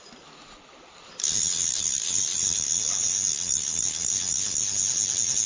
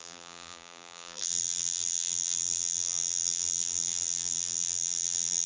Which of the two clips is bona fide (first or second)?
first